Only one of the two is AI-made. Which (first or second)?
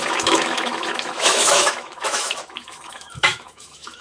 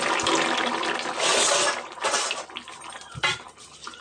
first